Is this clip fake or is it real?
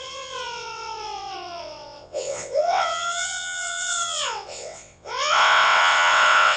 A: fake